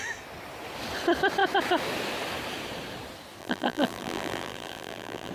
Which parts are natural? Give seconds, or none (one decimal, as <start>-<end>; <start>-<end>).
0.0-3.4